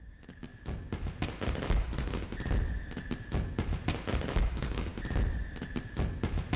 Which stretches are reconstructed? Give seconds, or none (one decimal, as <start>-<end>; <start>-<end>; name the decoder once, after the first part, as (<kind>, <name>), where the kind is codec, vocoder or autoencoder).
0.0-0.5 (codec, DAC); 4.5-4.9